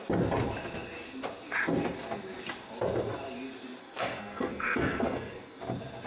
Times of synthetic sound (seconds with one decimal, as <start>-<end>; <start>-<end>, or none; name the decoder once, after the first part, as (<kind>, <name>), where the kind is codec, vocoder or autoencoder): 3.8-5.6 (codec, SNAC)